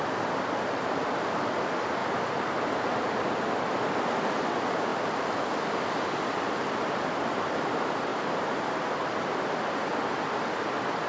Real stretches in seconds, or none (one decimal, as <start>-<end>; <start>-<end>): 0.0-2.0; 3.2-8.1; 8.8-11.1